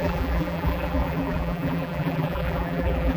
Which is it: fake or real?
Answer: fake